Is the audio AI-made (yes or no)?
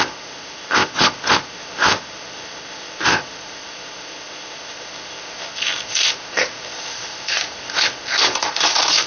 yes